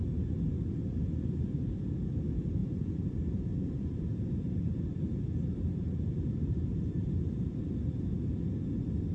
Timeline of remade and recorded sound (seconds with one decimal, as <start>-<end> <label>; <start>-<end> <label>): 0.0-2.6 recorded; 2.6-7.7 remade; 7.7-9.1 recorded